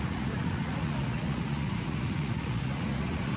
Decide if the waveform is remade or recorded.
remade